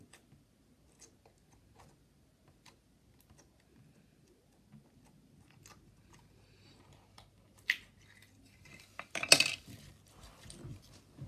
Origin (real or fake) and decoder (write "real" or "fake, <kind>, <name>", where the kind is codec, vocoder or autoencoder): real